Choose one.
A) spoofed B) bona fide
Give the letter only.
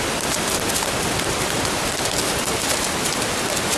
B